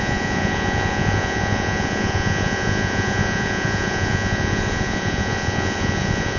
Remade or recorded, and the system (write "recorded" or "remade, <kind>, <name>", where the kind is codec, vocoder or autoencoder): remade, vocoder, Vocos